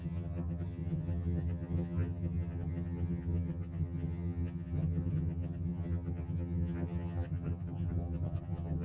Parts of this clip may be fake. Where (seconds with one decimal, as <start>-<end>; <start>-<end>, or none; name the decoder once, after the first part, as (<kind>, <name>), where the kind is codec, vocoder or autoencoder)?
0.0-8.8 (vocoder, HiFi-GAN)